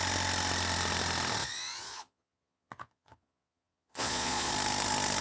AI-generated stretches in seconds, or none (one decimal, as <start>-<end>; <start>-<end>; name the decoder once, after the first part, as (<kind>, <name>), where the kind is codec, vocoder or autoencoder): 1.4-4.5 (vocoder, Vocos)